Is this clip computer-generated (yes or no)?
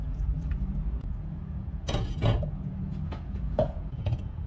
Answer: yes